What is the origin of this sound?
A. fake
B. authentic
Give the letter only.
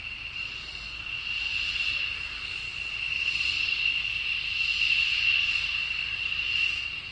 B